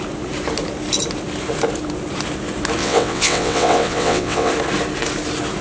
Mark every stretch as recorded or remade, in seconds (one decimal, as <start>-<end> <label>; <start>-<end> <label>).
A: 0.0-2.8 recorded; 2.8-4.5 remade; 4.5-5.6 recorded